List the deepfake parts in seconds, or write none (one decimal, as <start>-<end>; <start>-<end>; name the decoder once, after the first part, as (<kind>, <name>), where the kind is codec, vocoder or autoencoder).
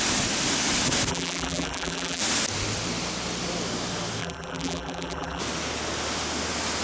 1.1-2.2 (vocoder, BigVGAN v2); 4.2-5.4